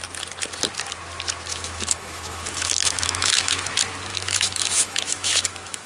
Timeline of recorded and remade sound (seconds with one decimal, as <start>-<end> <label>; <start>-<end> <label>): 0.0-1.5 recorded; 1.5-3.6 remade; 3.6-4.1 recorded; 4.1-5.9 remade